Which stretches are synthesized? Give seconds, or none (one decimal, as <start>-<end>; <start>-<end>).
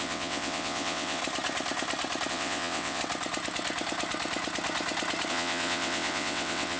0.0-1.2; 2.3-3.0; 5.3-6.8